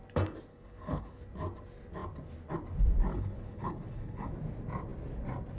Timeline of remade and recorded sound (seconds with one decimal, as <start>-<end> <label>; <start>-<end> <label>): 0.0-0.5 recorded; 0.5-1.2 remade; 1.2-3.1 recorded; 3.1-4.3 remade; 4.3-5.6 recorded